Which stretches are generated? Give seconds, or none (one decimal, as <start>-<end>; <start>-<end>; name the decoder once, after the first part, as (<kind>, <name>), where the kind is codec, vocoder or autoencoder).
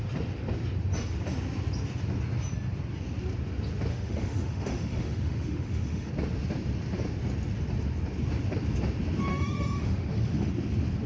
3.9-6.1 (autoencoder, DAC-VAE); 9.3-10.5